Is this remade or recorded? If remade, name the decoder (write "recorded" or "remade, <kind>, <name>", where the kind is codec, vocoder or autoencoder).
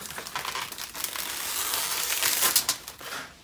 recorded